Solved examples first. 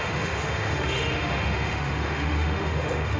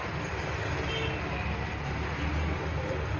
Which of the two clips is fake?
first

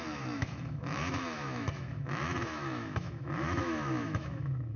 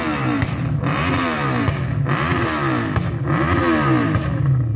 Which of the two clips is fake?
first